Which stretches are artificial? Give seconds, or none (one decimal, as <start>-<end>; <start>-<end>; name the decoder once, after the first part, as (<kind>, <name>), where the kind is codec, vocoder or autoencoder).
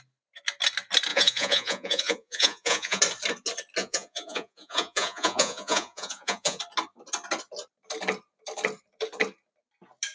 1.1-3.0 (vocoder, Vocos); 3.8-6.6